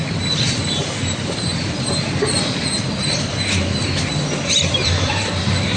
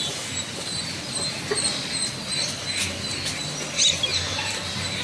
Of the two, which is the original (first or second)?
second